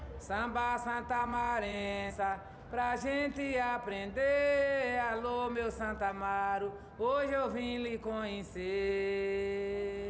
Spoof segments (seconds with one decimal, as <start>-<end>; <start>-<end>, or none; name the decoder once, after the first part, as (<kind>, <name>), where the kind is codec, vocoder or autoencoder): 1.2-2.1 (vocoder, Vocos)